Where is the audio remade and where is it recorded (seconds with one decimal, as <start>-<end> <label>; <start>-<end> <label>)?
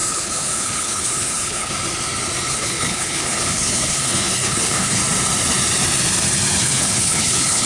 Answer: 0.0-1.7 remade; 1.7-2.5 recorded; 2.5-5.0 remade; 5.0-6.6 recorded; 6.6-7.7 remade